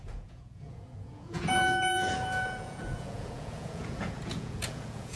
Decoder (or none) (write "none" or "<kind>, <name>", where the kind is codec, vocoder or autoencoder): vocoder, Vocos